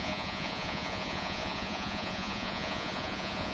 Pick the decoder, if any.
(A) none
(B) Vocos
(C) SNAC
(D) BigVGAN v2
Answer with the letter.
B